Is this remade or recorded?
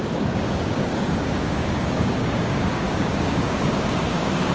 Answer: remade